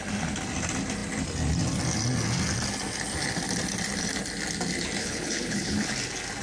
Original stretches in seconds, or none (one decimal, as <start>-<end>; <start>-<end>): 0.0-5.0; 5.9-6.4